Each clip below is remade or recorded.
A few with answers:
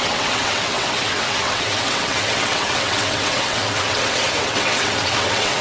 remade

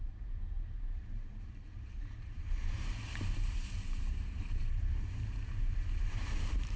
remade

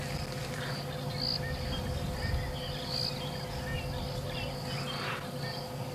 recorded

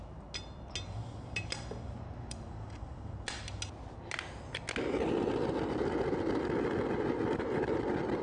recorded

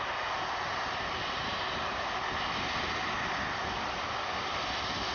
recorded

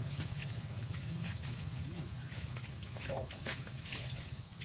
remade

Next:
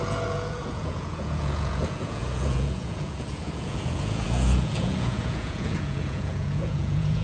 remade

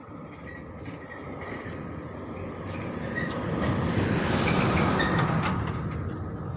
recorded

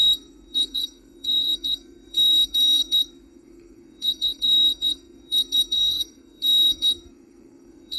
remade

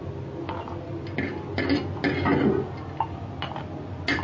recorded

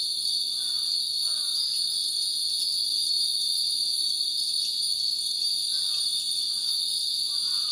recorded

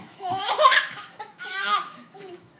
remade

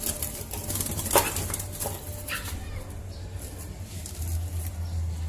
recorded